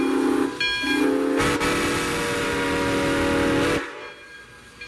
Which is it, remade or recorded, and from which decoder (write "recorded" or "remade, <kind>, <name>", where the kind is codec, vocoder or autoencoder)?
recorded